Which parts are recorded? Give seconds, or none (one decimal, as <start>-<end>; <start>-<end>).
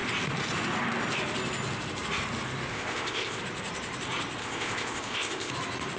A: 0.0-2.7; 3.4-4.4; 5.5-6.0